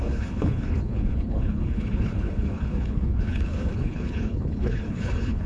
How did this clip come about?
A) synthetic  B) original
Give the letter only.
A